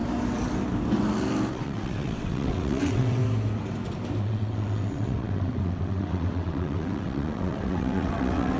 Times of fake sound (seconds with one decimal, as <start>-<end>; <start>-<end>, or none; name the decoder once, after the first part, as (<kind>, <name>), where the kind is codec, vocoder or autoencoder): 1.5-3.2 (vocoder, WaveNeXt); 4.2-8.6